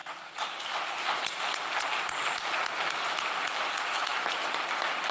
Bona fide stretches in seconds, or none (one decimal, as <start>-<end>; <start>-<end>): 0.0-5.1